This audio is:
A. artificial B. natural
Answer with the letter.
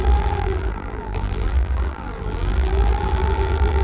A